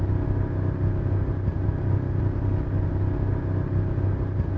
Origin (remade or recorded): recorded